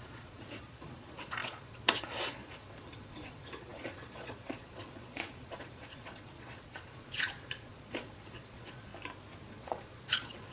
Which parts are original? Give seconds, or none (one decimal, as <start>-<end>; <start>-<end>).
8.9-9.5